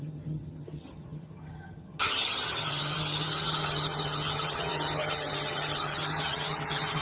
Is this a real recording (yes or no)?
no